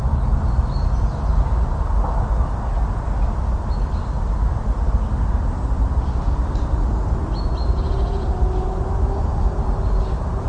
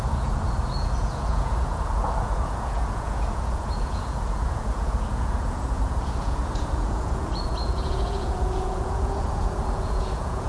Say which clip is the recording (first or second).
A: first